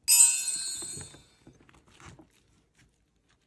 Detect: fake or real real